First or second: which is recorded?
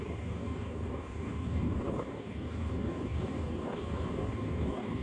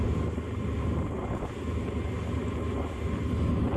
second